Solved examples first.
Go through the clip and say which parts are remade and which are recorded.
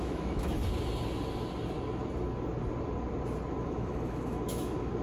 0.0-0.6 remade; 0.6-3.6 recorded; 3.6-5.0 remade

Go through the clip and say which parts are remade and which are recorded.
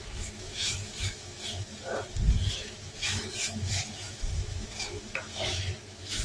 0.0-1.7 remade; 1.7-2.5 recorded; 2.5-6.2 remade